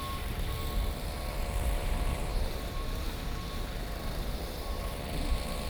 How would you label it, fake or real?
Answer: fake